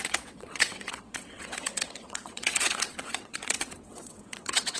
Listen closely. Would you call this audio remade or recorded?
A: remade